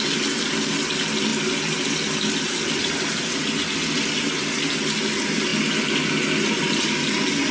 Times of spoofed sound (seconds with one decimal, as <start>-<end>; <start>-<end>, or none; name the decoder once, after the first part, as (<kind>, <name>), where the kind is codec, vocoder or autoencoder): none